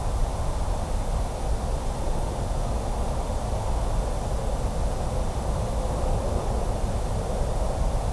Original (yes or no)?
yes